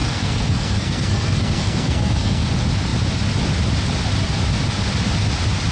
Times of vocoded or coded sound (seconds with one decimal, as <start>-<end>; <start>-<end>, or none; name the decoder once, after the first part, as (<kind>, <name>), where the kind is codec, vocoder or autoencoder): 0.0-2.5 (codec, SNAC)